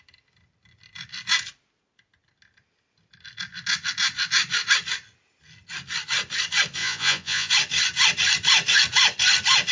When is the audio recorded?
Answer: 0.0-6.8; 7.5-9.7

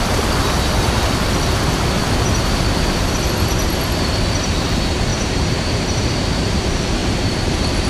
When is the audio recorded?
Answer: 0.0-5.1; 6.6-7.0

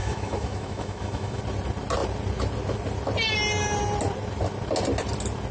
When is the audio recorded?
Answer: 1.4-5.5

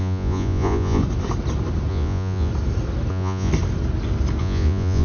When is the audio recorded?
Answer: 1.0-1.9; 2.5-3.1; 3.5-4.4